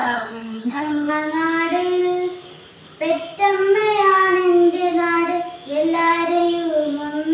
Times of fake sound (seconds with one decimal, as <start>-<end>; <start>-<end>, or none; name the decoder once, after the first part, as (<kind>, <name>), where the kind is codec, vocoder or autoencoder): 0.0-1.1 (codec, SNAC)